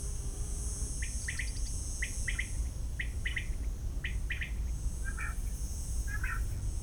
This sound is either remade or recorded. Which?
recorded